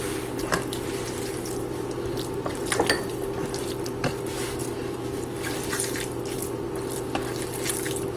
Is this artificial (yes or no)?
no